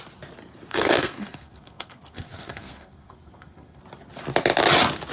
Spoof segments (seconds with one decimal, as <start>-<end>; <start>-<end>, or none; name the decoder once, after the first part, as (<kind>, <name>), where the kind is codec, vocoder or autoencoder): 0.7-3.8 (codec, SNAC)